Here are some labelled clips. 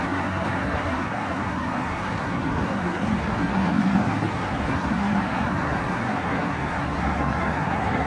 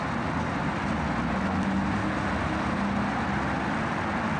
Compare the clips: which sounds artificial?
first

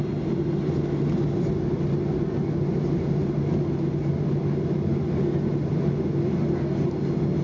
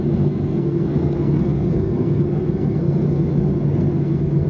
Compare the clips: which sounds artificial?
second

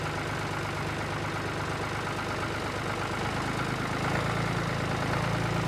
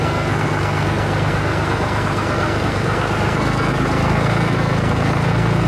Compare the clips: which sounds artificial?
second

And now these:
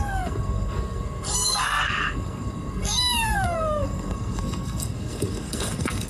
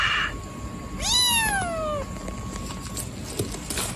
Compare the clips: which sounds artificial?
first